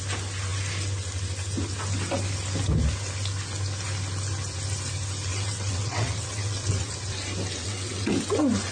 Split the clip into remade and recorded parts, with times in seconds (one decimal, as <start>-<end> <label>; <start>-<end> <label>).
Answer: 0.0-5.3 recorded; 5.3-6.9 remade; 6.9-7.6 recorded; 7.6-8.1 remade; 8.1-8.7 recorded